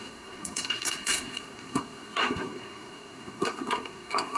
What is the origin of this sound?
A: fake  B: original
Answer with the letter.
A